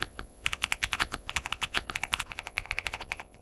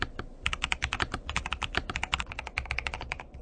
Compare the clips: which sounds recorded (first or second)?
second